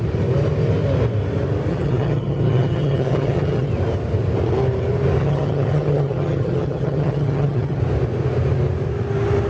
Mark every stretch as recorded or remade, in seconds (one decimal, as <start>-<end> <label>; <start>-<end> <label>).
0.0-1.7 recorded; 1.7-3.7 remade; 3.7-5.2 recorded; 5.2-7.8 remade; 7.8-9.5 recorded